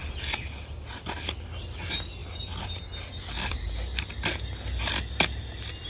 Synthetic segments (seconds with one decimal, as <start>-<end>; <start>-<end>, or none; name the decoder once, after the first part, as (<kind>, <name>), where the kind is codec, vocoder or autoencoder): none